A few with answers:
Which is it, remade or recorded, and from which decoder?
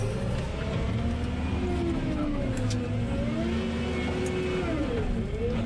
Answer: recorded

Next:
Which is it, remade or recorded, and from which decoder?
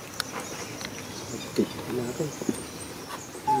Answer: recorded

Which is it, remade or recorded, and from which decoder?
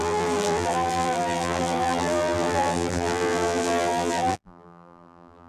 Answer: remade, vocoder, BigVGAN v2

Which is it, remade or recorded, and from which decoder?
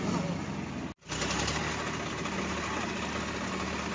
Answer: recorded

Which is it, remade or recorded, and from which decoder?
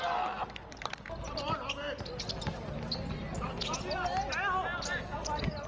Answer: recorded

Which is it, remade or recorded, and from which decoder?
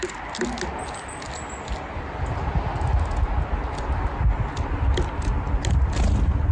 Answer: recorded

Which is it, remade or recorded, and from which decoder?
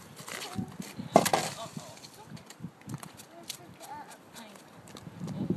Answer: remade, vocoder, BigVGAN v2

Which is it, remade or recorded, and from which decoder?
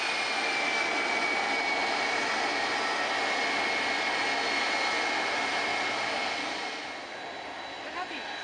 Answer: recorded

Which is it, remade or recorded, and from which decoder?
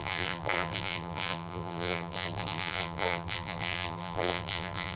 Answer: remade, vocoder, BigVGAN v2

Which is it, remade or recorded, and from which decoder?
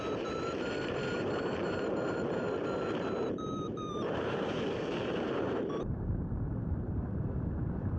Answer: remade, vocoder, BigVGAN v2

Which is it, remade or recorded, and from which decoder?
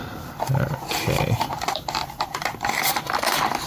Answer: remade, vocoder, BigVGAN v2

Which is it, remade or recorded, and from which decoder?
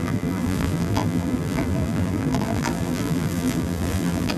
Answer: remade, vocoder, BigVGAN v2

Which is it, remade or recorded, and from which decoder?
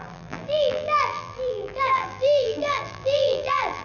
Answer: remade, vocoder, BigVGAN v2